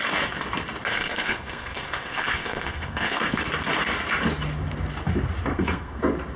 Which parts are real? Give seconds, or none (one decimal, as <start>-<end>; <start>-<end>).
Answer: 0.0-0.9; 3.4-5.5; 6.0-6.4